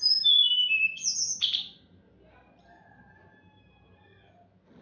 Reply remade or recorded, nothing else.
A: recorded